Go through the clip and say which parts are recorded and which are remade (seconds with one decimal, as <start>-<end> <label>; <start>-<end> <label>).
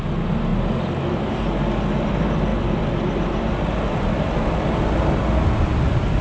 0.0-6.2 recorded